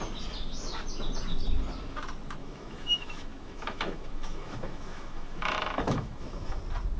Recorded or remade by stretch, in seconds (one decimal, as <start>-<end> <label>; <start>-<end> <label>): 0.0-2.4 recorded; 2.4-6.6 remade; 6.6-7.0 recorded